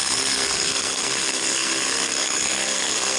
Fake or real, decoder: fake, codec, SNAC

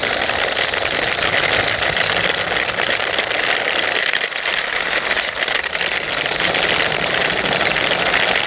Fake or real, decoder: real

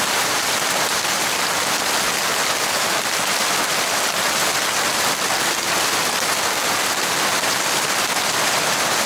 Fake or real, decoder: real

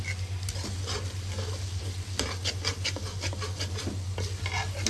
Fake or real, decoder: real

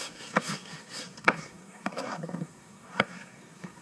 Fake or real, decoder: fake, codec, SNAC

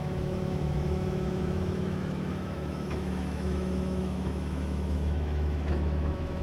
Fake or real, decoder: fake, autoencoder, DAC-VAE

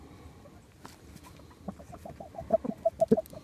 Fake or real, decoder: real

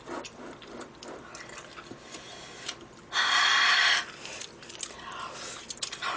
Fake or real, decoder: real